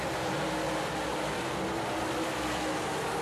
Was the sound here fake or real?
real